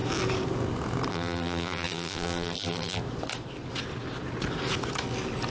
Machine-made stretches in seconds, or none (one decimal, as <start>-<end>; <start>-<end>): 1.1-3.0